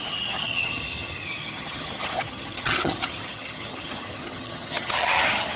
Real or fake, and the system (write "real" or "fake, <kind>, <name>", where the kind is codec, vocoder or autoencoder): fake, vocoder, HiFi-GAN